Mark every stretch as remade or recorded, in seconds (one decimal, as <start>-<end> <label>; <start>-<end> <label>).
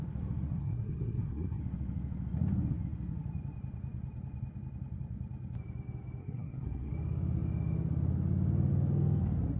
0.0-0.6 recorded; 0.6-1.6 remade; 1.6-6.2 recorded; 6.2-6.9 remade; 6.9-9.6 recorded